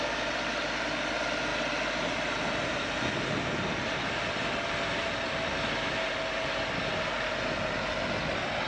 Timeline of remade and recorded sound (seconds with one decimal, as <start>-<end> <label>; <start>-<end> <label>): 0.0-8.7 recorded

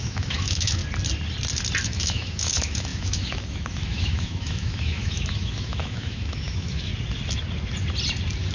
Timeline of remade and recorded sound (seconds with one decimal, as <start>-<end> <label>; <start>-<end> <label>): 0.0-0.8 remade; 0.8-1.8 recorded; 1.8-6.9 remade; 6.9-8.5 recorded